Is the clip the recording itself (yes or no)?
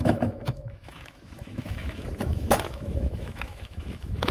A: no